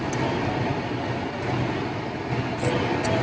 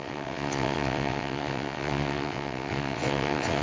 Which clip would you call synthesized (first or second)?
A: second